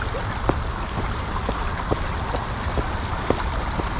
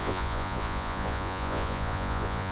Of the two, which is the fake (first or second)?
second